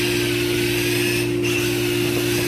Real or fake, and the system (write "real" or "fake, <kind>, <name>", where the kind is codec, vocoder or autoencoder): real